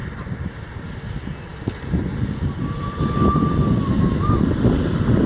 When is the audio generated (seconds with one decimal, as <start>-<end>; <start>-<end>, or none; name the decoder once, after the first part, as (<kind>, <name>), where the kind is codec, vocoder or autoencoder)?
0.0-0.9 (vocoder, BigVGAN v2); 1.5-3.8